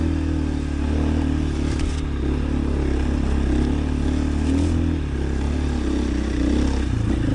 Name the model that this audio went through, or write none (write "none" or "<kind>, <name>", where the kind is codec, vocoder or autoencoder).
none